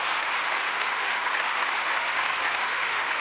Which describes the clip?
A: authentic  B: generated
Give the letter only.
B